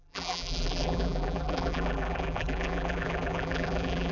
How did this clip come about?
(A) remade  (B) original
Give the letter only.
A